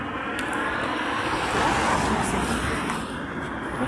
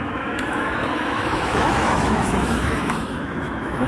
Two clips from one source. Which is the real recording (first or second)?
first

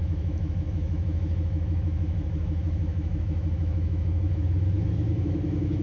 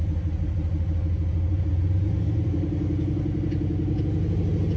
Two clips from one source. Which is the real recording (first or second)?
second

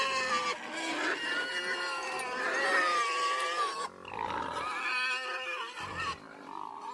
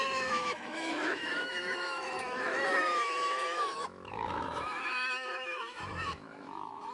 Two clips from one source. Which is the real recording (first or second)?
first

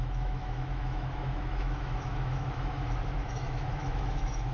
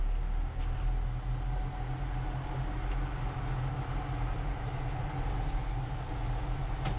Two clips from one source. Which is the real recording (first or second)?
second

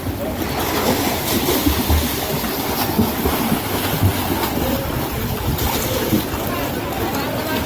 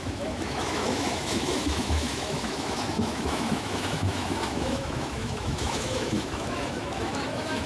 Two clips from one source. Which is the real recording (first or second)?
first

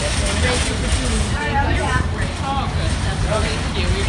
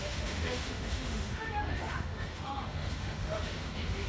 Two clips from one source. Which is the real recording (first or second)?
first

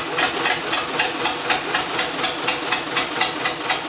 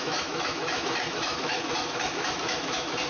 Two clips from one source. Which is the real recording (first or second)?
first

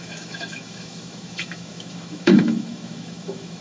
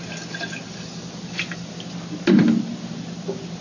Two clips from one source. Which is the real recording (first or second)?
second